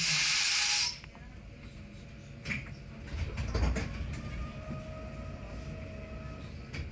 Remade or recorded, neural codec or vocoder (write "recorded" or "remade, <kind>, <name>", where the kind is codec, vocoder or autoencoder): recorded